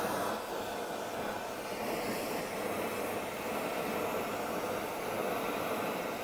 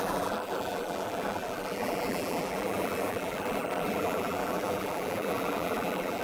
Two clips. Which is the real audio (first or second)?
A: first